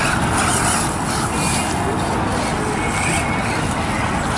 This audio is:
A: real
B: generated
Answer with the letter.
A